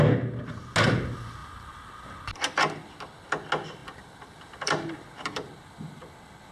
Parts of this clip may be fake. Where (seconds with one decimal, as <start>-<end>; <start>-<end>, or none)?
1.4-2.9; 3.8-6.1